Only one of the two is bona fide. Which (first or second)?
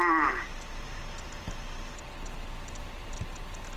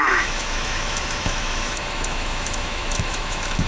first